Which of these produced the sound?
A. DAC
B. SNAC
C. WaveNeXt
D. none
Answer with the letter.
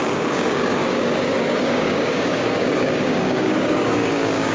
A